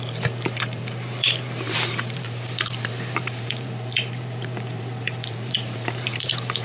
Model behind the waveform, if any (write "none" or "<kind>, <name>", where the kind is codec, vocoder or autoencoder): vocoder, BigVGAN v2